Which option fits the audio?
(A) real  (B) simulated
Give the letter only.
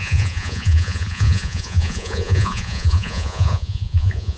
B